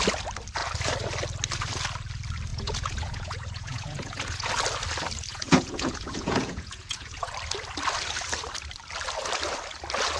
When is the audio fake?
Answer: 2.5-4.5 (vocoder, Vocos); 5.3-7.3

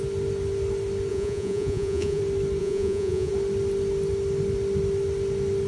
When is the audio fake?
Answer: 1.1-2.2 (vocoder, Vocos); 2.6-3.3